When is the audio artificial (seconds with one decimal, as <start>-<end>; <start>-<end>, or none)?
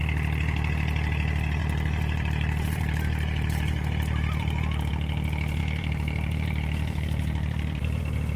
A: 1.6-4.9; 5.6-8.0